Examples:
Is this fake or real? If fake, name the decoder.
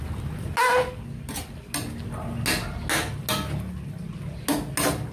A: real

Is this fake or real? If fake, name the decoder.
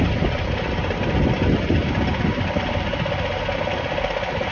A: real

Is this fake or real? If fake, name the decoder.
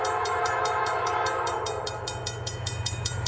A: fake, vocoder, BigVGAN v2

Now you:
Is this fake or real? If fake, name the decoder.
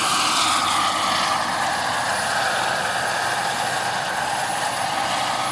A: real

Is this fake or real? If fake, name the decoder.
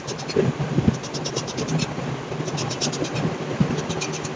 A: real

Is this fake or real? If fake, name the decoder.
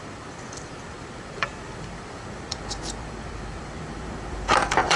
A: fake, vocoder, BigVGAN v2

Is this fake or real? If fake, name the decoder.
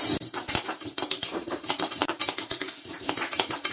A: fake, vocoder, BigVGAN v2